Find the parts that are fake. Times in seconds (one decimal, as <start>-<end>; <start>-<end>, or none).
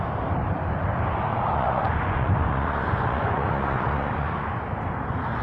1.3-4.5